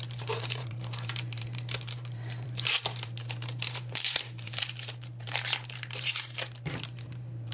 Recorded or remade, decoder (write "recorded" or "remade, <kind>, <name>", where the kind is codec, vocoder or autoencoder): remade, vocoder, BigVGAN v2